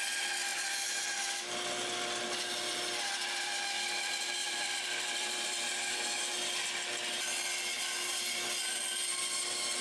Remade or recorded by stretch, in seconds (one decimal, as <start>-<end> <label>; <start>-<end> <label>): 0.0-4.4 recorded; 4.4-6.0 remade; 6.0-9.8 recorded